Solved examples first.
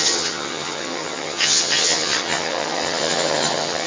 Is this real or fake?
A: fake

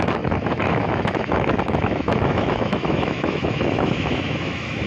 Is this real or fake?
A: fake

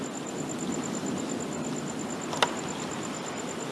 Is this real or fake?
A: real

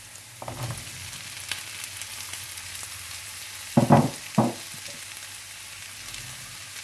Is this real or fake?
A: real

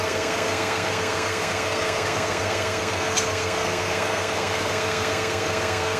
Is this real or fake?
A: fake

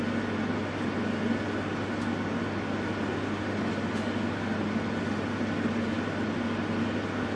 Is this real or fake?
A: real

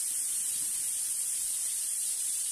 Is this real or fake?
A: fake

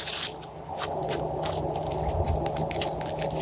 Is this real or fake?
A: real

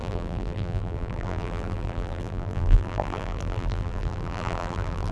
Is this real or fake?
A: fake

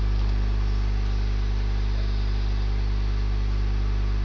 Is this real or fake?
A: real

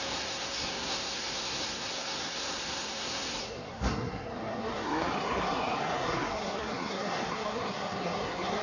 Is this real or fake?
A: fake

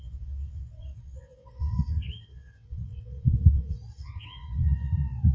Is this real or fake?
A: fake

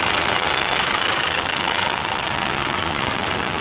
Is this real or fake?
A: fake